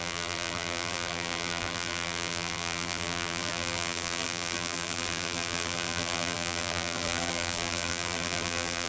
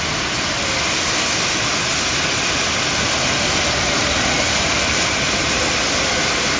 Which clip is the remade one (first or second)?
first